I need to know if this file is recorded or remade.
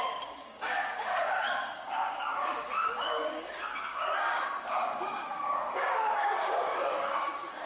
remade